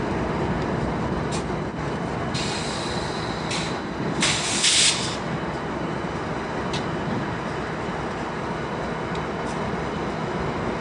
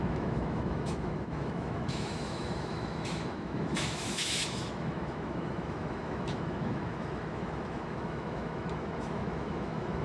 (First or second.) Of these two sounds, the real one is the first